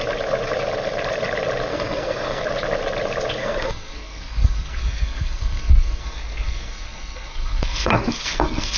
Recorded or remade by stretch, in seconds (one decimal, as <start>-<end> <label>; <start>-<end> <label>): 0.0-1.7 recorded; 1.7-2.4 remade; 2.4-3.4 recorded; 3.4-8.8 remade